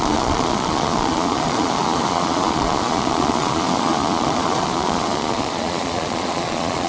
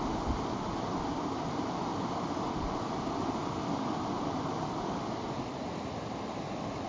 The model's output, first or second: first